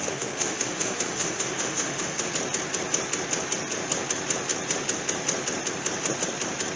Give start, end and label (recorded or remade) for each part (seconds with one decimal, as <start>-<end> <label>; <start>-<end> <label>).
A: 0.0-2.3 remade; 2.3-6.8 recorded